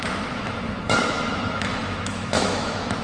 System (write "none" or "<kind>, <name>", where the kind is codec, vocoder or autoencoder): autoencoder, DAC-VAE